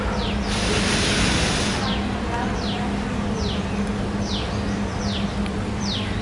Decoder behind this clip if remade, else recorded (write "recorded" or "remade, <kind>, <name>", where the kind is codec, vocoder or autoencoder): recorded